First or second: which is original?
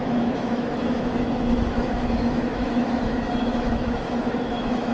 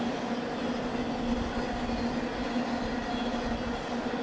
second